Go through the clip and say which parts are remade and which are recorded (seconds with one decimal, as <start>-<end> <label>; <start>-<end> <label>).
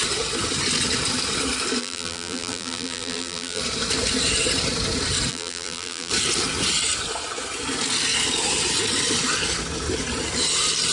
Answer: 0.0-1.8 recorded; 1.8-3.6 remade; 3.6-5.3 recorded; 5.3-6.1 remade; 6.1-10.9 recorded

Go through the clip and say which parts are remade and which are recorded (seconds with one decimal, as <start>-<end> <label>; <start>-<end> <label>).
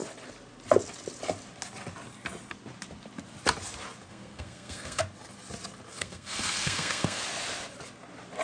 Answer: 0.0-4.1 recorded; 4.1-5.0 remade; 5.0-5.9 recorded; 5.9-7.2 remade; 7.2-8.4 recorded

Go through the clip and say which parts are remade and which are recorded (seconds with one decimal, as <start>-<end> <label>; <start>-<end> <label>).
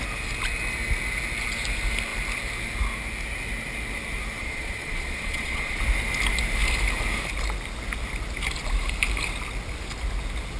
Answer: 0.0-4.4 recorded; 4.4-5.8 remade; 5.8-10.6 recorded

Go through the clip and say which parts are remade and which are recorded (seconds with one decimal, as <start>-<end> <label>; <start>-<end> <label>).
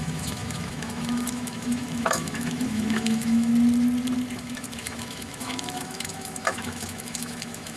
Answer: 0.0-3.5 remade; 3.5-4.4 recorded; 4.4-7.8 remade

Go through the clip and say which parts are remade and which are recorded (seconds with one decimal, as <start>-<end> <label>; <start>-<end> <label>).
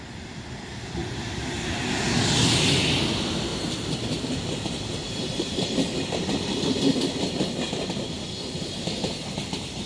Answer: 0.0-1.0 recorded; 1.0-1.8 remade; 1.8-3.5 recorded; 3.5-6.5 remade; 6.5-9.9 recorded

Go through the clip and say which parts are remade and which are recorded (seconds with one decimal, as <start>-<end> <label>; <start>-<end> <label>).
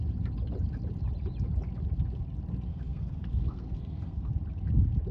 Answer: 0.0-2.7 recorded; 2.7-4.3 remade; 4.3-5.1 recorded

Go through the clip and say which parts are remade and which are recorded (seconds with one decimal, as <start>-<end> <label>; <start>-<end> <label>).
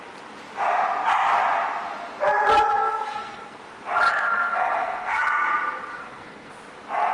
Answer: 0.0-2.7 recorded; 2.7-3.6 remade; 3.6-4.1 recorded; 4.1-5.2 remade; 5.2-5.9 recorded; 5.9-6.5 remade; 6.5-7.1 recorded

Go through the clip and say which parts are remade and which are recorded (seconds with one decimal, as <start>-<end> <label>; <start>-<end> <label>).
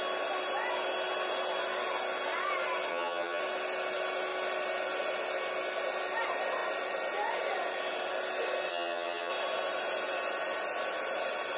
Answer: 0.0-2.9 recorded; 2.9-3.4 remade; 3.4-8.7 recorded; 8.7-9.3 remade; 9.3-11.6 recorded